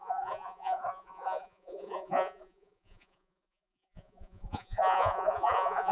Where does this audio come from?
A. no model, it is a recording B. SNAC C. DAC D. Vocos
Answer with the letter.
D